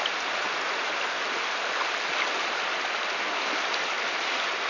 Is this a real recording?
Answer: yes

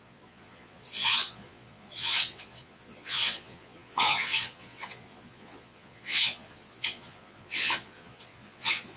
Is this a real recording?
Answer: no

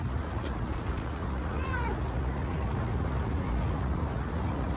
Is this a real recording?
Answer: no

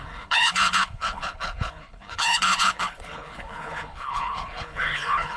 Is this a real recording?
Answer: no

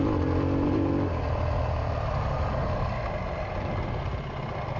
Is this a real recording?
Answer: yes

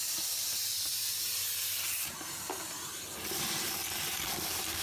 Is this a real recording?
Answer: yes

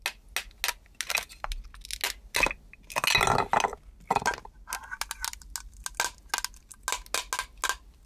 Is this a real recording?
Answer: yes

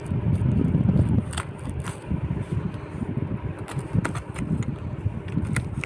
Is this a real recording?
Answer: yes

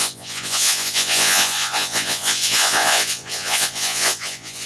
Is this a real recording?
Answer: no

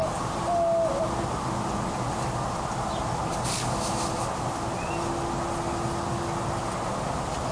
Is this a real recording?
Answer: yes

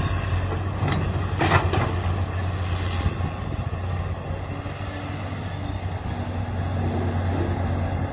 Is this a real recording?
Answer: yes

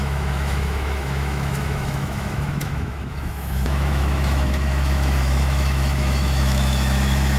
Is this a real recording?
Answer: no